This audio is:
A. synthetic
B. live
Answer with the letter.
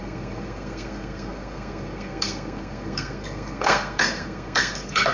A